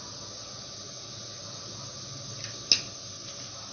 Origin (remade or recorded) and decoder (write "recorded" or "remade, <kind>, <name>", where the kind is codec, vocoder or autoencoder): recorded